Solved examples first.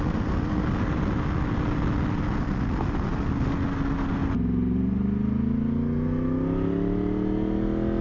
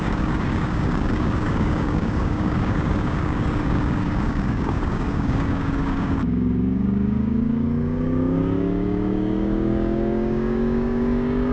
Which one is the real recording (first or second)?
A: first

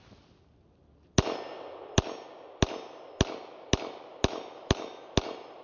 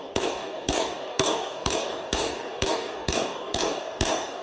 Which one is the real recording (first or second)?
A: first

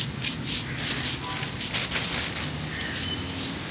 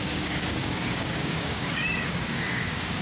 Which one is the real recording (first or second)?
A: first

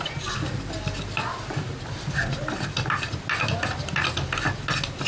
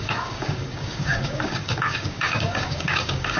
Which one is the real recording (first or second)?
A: first